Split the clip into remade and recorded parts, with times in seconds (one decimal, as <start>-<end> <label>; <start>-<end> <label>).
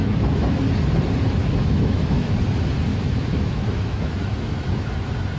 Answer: 0.0-0.6 remade; 0.6-1.4 recorded; 1.4-2.4 remade; 2.4-2.9 recorded; 2.9-4.9 remade; 4.9-5.4 recorded